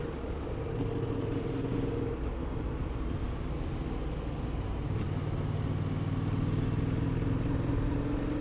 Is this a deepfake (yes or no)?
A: no